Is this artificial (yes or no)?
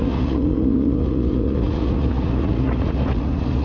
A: yes